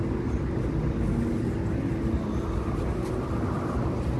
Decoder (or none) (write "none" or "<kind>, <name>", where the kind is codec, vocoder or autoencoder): none